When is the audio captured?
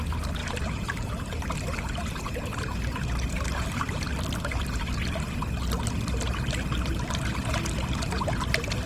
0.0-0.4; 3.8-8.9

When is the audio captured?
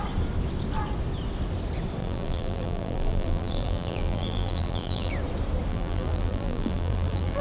0.0-2.0; 5.1-5.7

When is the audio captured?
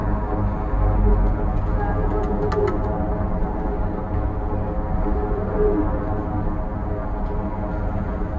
0.0-3.4; 4.0-8.4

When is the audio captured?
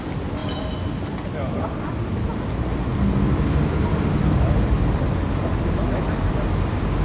0.0-7.0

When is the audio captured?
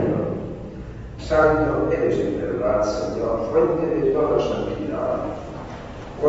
0.0-0.8; 1.5-6.3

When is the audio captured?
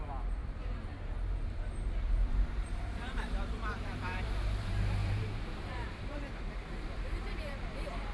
none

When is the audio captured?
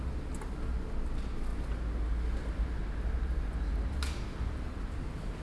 0.0-5.4